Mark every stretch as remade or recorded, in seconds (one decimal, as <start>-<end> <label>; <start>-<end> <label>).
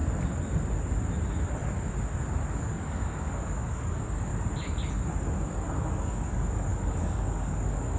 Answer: 0.0-2.5 recorded; 2.5-4.3 remade; 4.3-5.8 recorded; 5.8-8.0 remade